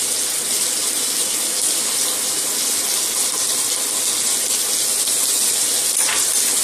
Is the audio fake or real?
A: real